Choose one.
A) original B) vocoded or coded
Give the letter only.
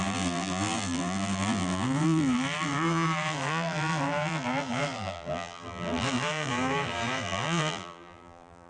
B